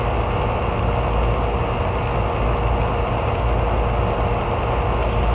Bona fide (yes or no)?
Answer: yes